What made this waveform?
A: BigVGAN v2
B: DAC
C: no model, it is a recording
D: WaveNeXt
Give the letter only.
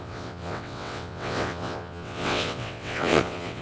D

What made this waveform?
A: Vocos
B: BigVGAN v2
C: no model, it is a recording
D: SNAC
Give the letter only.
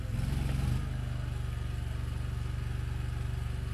C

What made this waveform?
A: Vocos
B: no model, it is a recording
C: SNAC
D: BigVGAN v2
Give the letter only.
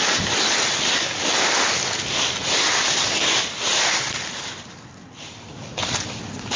B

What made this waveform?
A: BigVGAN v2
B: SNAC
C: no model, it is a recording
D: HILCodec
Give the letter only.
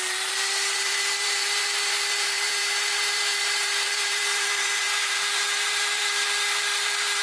A